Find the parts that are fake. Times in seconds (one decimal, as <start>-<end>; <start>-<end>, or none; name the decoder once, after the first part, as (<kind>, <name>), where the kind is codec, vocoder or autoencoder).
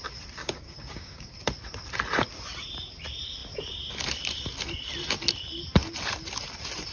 0.4-1.3 (codec, DAC)